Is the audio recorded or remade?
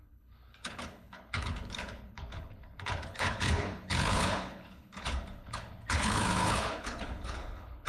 remade